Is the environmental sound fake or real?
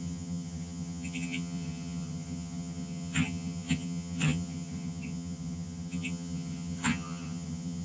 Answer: fake